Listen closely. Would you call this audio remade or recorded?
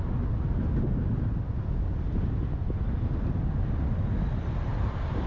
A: recorded